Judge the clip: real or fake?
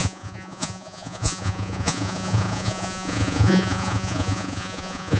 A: fake